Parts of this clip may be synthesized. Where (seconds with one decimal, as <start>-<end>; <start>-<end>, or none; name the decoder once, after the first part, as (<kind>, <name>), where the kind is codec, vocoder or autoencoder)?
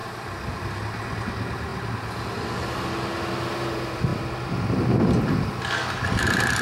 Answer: none